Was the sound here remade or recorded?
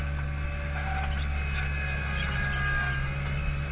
recorded